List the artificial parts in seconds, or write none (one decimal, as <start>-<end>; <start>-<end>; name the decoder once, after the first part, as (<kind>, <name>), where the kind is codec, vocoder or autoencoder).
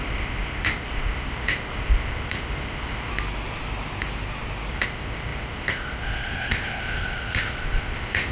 0.0-3.1 (codec, ZipCodec); 4.7-8.3